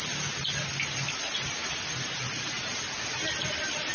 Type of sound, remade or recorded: recorded